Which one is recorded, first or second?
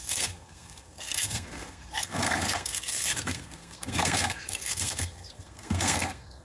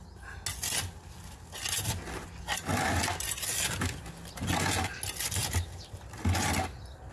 second